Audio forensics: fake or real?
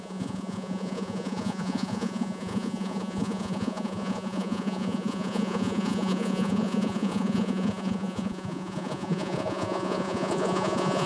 fake